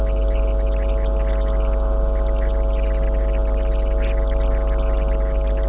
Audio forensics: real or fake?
real